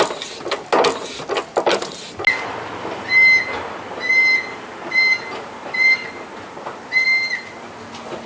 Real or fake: real